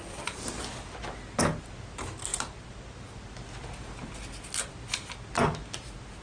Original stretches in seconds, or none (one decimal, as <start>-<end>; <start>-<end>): 0.0-6.2